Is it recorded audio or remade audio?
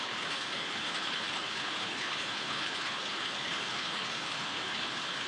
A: remade